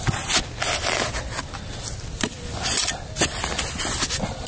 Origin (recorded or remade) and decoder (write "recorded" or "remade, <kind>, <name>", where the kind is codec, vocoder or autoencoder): recorded